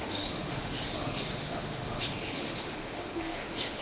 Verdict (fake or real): fake